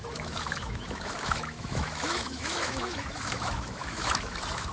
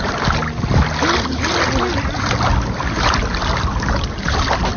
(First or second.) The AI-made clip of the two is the first